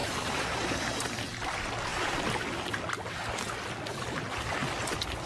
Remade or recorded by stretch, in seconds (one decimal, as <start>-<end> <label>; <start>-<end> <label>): 0.0-1.1 remade; 1.1-5.3 recorded